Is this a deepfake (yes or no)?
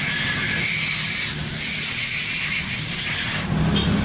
no